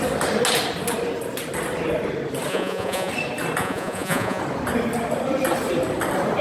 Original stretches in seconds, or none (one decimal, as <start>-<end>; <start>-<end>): 0.0-2.5; 3.1-3.6; 4.4-6.4